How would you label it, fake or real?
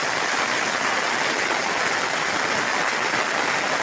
real